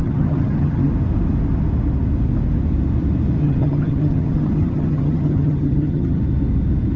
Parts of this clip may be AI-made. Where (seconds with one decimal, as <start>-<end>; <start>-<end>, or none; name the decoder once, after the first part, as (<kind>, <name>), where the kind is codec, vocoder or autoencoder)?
0.0-0.9 (vocoder, HiFi-GAN); 3.4-6.2